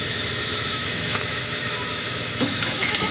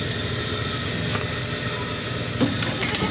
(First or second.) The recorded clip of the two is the second